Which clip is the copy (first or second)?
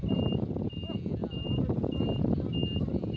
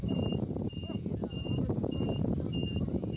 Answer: second